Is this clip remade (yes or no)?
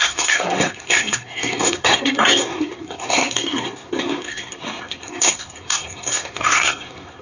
yes